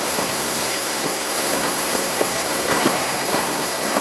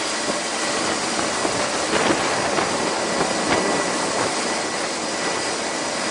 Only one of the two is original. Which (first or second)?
second